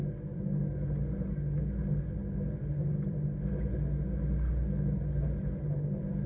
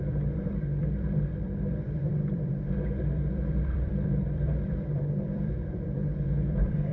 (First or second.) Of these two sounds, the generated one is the second